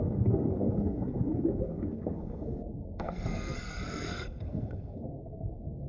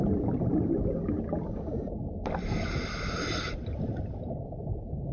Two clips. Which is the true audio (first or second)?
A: second